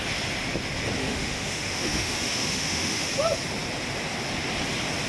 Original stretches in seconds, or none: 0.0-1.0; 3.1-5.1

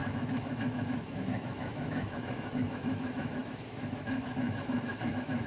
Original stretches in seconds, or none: none

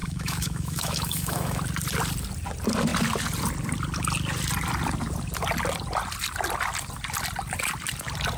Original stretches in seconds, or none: 1.6-8.4

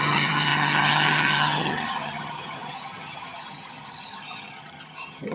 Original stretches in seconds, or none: none

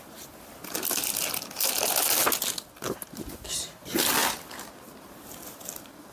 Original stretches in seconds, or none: 0.0-6.1

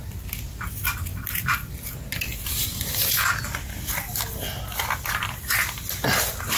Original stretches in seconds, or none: 0.0-6.6